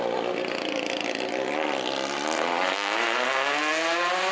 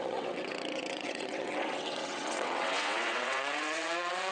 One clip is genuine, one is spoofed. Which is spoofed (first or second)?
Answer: second